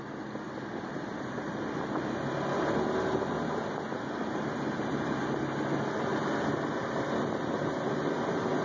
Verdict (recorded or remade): recorded